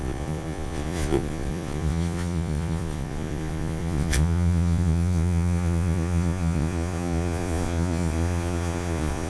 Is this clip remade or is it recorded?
remade